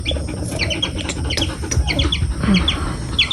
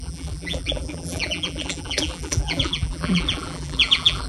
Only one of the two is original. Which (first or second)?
first